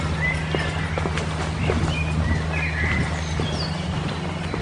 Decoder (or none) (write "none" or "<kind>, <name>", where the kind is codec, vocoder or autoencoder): none